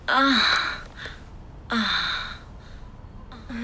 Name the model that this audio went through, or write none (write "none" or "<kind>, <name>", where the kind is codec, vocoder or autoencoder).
none